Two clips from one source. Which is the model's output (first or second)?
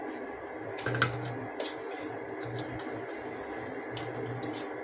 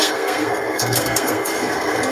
second